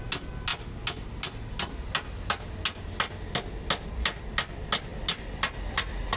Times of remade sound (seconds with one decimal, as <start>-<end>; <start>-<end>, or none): none